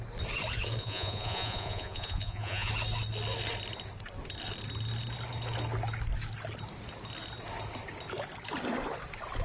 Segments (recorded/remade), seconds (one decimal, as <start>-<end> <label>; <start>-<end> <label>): 0.0-0.8 recorded; 0.8-2.7 remade; 2.7-9.4 recorded